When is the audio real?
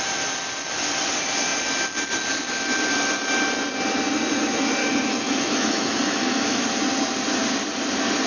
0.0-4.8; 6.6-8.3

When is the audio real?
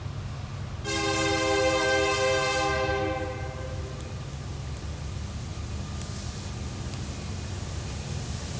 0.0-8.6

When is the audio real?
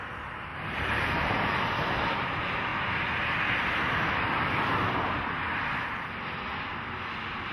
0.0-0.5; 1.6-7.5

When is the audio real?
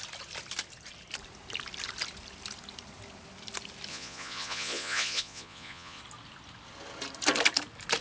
0.0-3.9; 6.0-8.0